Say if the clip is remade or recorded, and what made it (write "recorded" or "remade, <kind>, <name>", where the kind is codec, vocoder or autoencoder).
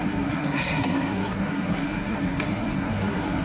remade, codec, SNAC